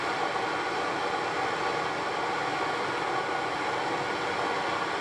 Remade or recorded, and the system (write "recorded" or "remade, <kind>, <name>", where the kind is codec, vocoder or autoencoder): recorded